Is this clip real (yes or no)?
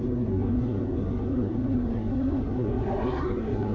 no